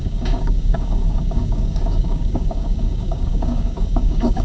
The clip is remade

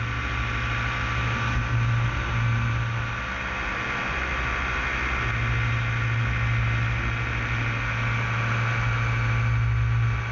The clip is recorded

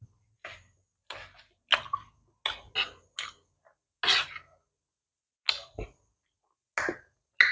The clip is recorded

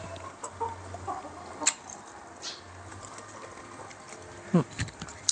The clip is recorded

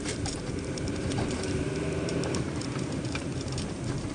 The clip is remade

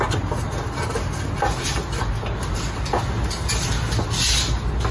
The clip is recorded